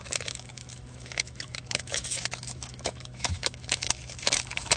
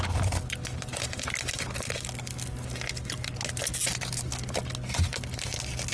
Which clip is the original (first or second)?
second